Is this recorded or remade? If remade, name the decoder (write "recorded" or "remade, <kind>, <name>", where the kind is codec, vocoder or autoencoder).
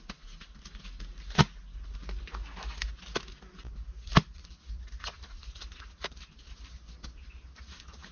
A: recorded